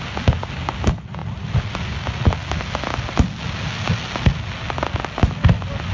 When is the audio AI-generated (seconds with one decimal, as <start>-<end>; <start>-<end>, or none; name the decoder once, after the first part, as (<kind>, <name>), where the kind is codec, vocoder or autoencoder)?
none